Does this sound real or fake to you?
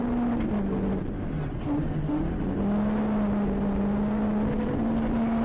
real